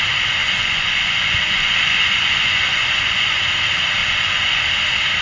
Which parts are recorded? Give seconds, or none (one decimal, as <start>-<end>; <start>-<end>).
0.0-0.4; 3.4-4.0; 4.6-5.2